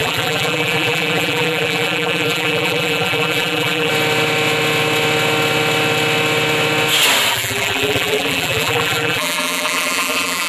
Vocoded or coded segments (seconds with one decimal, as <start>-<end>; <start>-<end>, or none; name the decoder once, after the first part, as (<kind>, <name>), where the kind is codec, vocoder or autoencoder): 0.0-3.9 (vocoder, BigVGAN v2); 7.3-10.5